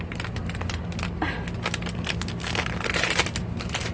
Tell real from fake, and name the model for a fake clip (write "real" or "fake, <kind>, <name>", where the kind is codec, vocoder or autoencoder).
real